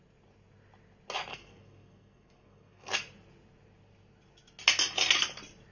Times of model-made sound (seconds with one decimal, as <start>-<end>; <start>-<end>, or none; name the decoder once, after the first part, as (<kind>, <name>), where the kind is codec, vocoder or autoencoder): 1.3-2.9 (codec, SNAC)